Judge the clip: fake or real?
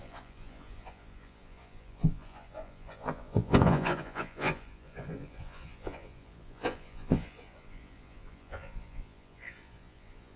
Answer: fake